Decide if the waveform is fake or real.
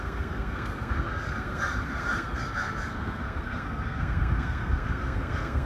fake